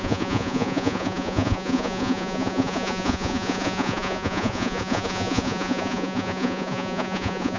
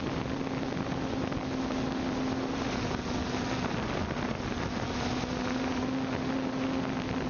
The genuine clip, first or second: second